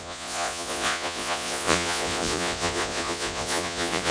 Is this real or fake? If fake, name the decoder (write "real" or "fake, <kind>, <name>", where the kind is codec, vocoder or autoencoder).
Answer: fake, vocoder, Vocos